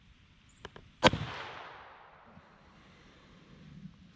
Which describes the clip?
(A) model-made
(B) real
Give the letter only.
B